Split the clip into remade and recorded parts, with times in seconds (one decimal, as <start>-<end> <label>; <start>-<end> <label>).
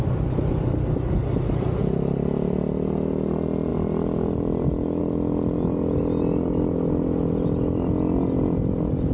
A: 0.0-9.1 recorded